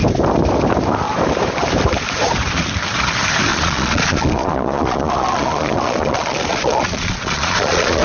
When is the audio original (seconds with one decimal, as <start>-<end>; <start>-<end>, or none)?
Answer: 0.0-3.5